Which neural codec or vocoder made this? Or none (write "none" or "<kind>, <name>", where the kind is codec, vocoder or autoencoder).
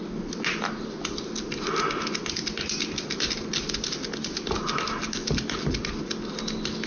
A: none